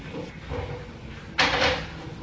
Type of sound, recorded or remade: recorded